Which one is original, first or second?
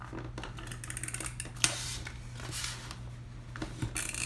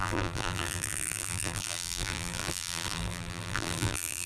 first